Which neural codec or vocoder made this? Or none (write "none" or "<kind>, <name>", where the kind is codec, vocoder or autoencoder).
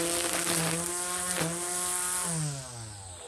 none